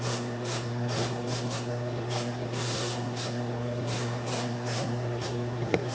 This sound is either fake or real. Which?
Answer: fake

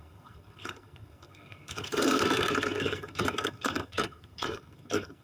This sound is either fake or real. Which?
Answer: fake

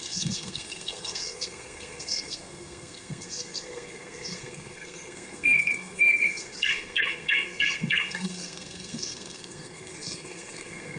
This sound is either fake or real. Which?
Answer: fake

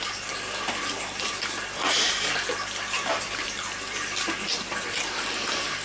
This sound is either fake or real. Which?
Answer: real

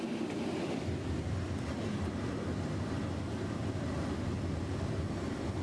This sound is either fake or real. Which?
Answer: real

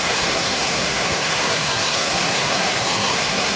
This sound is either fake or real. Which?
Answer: fake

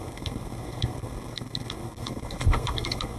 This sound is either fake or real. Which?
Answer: fake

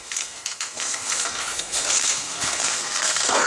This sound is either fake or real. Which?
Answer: fake